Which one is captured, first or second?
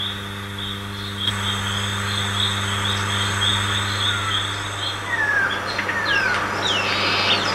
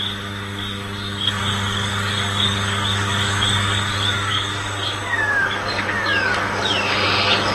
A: first